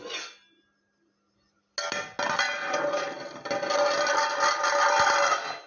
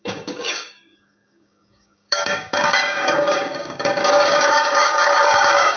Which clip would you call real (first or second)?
first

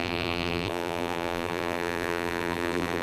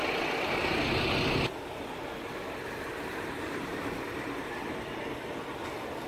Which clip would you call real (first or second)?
second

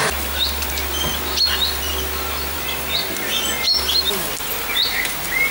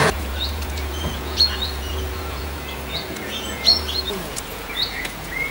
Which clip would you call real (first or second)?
first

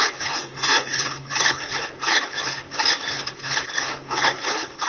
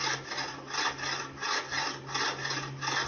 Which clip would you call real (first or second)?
second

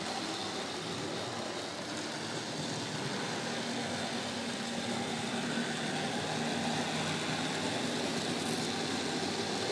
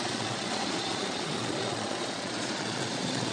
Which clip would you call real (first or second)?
first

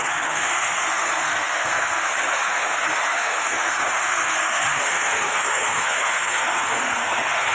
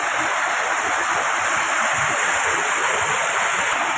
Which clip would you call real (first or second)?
second